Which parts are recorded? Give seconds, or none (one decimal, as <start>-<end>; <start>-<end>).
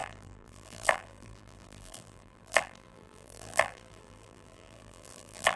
none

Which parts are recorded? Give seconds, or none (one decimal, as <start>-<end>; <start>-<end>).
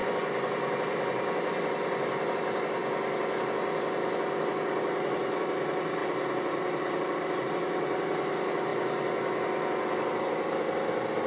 0.0-6.0; 7.5-11.3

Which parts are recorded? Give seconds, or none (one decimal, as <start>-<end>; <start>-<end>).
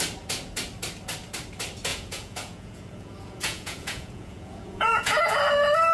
0.0-1.9; 5.4-5.9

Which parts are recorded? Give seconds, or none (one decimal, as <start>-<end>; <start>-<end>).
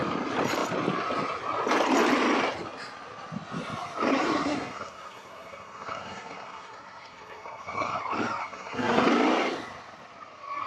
0.0-4.1; 8.0-8.4; 9.1-10.7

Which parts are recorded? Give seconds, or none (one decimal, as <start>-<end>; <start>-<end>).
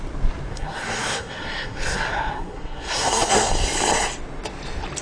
0.0-0.5; 3.5-5.0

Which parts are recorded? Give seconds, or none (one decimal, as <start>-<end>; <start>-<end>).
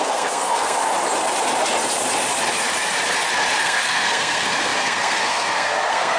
0.8-3.6